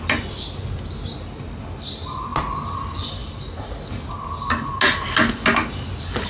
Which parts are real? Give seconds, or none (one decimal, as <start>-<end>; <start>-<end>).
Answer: 0.0-6.3